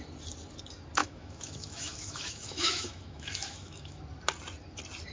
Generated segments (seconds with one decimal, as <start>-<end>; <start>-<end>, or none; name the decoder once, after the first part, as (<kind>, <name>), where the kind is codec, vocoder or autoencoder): 1.0-4.0 (autoencoder, DAC-VAE)